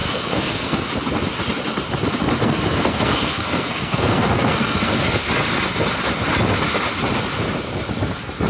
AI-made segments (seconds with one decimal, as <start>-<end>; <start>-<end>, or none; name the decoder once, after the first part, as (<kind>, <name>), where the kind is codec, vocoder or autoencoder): 0.0-0.9 (codec, SNAC); 2.4-5.2